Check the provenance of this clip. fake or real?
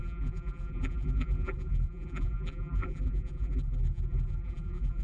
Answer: fake